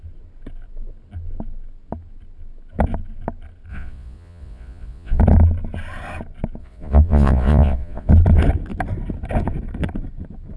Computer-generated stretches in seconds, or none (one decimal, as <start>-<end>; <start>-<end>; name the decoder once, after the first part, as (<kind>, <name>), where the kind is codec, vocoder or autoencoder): 3.7-5.2 (vocoder, Vocos); 6.6-8.1